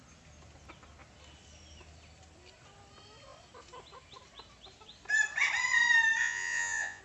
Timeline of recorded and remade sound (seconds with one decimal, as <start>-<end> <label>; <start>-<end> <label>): 0.0-6.2 recorded; 6.2-7.0 remade